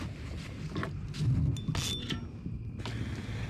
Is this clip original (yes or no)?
yes